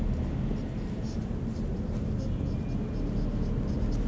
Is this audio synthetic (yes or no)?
no